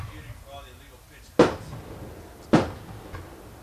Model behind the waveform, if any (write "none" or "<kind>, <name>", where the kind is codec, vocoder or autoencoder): none